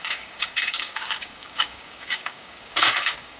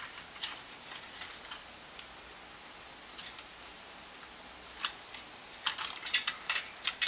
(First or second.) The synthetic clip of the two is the first